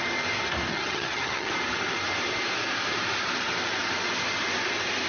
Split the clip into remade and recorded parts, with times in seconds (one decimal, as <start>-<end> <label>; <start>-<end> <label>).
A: 0.0-0.7 recorded; 0.7-1.5 remade; 1.5-5.1 recorded